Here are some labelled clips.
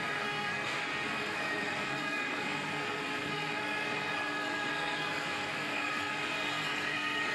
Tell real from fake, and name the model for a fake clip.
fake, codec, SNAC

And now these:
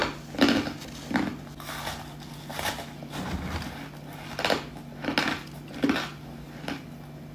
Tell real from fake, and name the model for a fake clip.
real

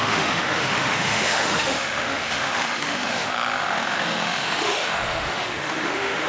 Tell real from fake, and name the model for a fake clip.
fake, autoencoder, DAC-VAE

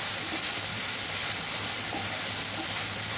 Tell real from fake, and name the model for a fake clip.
real